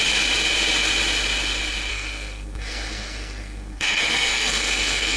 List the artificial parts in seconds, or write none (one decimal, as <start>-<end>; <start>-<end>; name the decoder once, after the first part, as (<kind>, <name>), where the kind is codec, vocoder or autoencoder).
1.9-5.2 (codec, SNAC)